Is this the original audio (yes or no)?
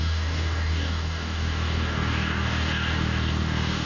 no